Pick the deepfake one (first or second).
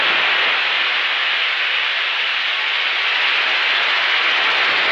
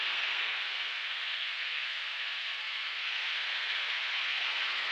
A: second